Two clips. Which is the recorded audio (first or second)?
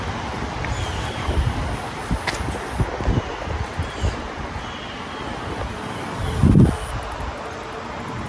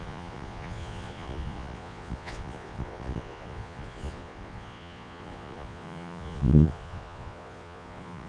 first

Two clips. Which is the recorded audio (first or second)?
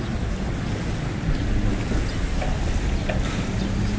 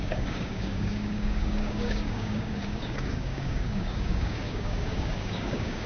first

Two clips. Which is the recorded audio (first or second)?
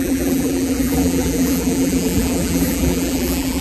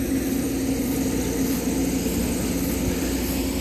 second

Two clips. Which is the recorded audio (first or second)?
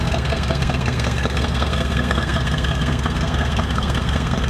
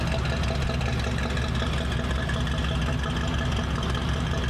second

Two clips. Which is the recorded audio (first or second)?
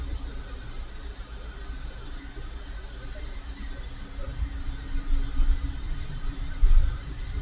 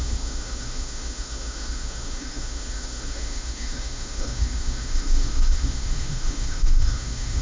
first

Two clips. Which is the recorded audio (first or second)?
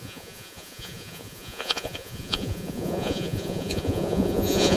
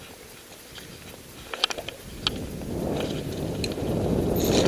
second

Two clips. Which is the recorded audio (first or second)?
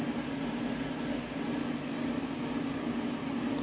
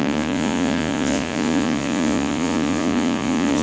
first